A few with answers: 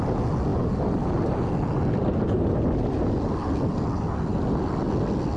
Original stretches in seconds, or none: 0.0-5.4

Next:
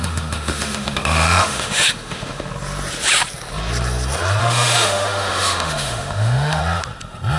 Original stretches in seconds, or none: 2.5-4.4; 6.6-7.4

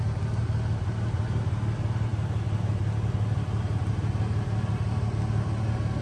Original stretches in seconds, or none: 0.0-6.0

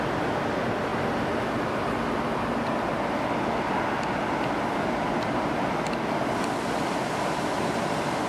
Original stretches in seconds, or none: 0.0-8.3

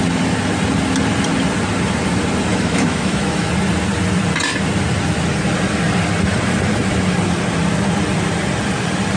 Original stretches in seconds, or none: 0.0-2.5; 3.5-9.2

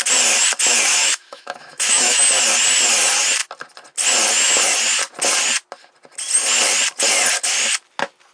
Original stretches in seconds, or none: 0.0-1.0; 2.2-8.3

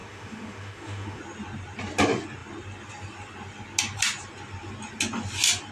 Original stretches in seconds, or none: 1.2-5.7